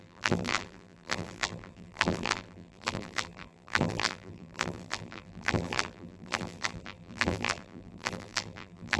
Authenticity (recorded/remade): remade